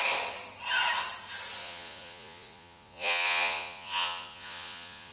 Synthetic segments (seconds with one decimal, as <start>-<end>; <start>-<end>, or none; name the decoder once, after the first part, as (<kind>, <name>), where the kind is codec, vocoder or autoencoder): 1.6-5.1 (vocoder, Vocos)